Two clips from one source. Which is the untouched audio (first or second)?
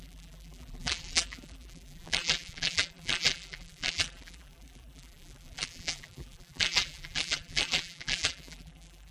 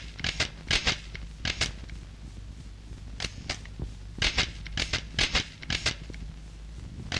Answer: second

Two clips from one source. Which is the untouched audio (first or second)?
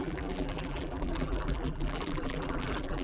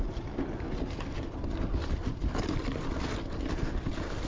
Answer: second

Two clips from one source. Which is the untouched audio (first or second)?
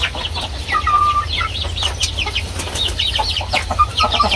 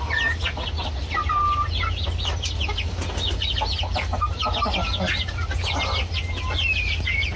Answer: second